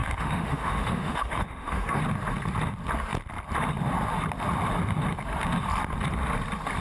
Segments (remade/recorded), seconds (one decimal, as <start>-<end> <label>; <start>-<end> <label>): 0.0-2.0 remade; 2.0-6.8 recorded